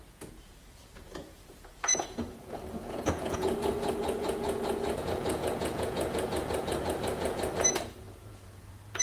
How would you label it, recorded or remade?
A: remade